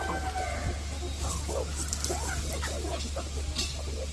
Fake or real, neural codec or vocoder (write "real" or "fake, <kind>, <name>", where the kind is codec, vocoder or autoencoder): real